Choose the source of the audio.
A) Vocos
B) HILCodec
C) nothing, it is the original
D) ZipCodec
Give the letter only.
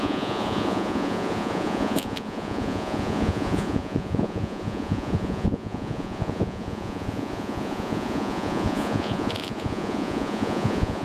A